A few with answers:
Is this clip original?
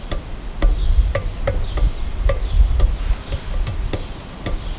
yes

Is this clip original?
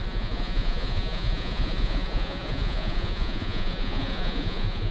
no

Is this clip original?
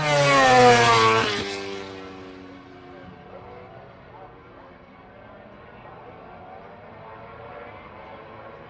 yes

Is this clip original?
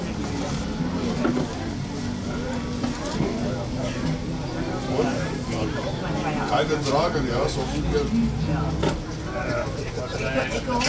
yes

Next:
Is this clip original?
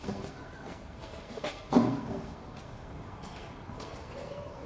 no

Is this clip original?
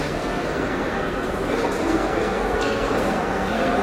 no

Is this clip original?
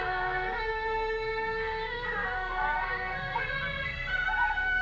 no